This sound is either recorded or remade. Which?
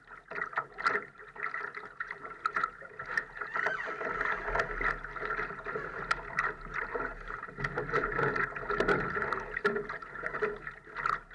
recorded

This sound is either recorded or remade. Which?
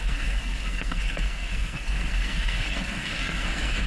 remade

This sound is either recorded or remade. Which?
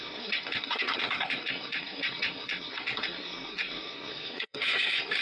remade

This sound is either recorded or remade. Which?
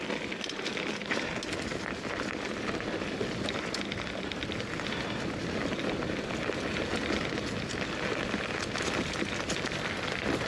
recorded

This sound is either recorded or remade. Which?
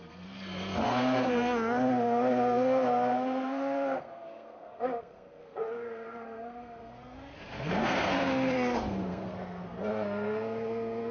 remade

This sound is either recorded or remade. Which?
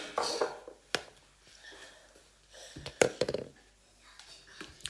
recorded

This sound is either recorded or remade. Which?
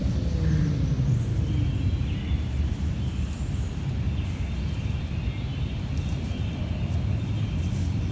recorded